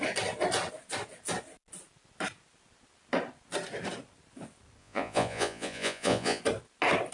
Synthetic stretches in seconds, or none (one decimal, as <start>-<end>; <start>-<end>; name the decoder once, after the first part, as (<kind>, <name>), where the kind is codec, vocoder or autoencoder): 4.8-6.4 (vocoder, Vocos)